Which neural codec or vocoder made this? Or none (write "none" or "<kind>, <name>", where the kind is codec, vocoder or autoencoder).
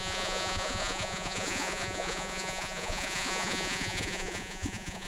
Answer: vocoder, Vocos